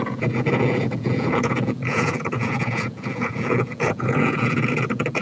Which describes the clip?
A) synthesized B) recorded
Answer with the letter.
A